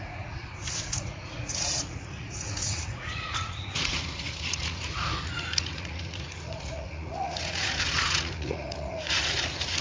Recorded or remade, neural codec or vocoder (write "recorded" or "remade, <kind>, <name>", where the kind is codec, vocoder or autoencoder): remade, vocoder, Vocos